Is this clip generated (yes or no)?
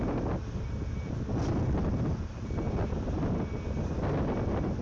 no